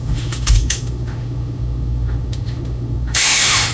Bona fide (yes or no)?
no